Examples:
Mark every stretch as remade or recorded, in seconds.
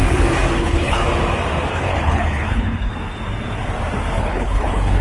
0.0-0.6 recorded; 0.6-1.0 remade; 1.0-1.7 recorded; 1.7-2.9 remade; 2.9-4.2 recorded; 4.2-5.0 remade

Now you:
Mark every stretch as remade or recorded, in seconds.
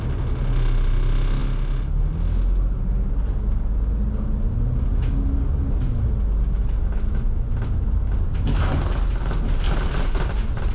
0.0-10.7 recorded